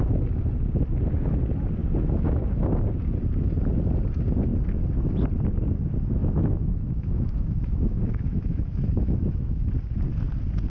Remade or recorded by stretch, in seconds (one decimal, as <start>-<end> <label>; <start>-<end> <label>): 0.0-6.2 recorded; 6.2-9.7 remade; 9.7-10.7 recorded